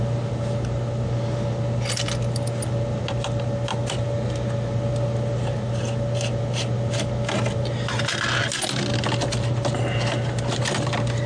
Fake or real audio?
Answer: real